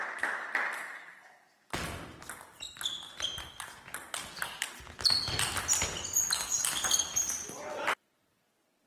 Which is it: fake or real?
real